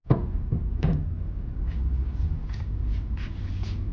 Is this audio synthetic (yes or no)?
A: no